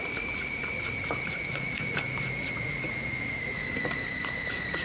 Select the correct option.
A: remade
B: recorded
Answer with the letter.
A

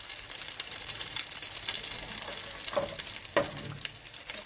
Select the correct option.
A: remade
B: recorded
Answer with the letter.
B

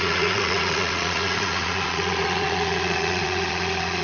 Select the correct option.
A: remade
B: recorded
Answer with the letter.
A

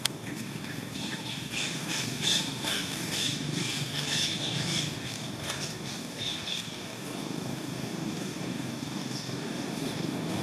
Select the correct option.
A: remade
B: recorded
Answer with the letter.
A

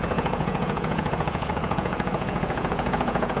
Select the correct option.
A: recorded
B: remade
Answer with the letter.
B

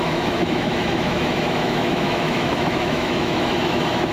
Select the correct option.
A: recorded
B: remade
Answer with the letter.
B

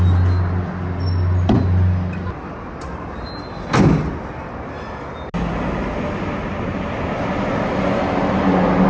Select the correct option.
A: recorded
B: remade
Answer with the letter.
A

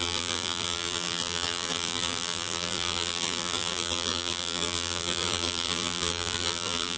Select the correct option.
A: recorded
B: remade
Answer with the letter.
B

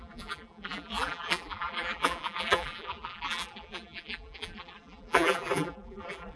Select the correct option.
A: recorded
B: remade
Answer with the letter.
B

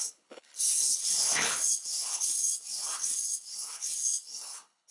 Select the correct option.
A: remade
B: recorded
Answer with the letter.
A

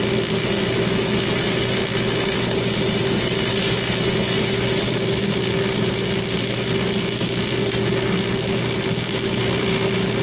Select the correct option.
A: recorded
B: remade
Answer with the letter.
A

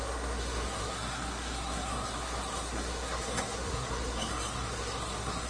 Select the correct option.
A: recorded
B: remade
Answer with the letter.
B